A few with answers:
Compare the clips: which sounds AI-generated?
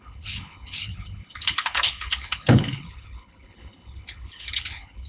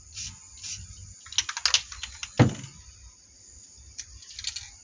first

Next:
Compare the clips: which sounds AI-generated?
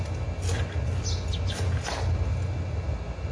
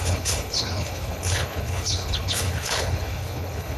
second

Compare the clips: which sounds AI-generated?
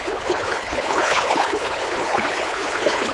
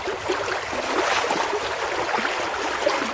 first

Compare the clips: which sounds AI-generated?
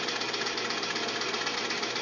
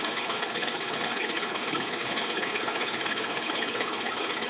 second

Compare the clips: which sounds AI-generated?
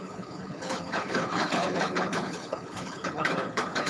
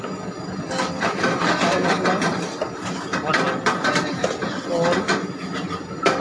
first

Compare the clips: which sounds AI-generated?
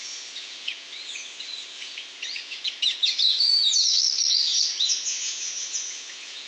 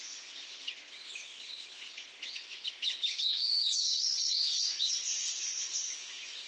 second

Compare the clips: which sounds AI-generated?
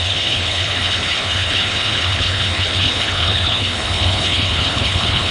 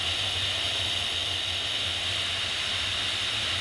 first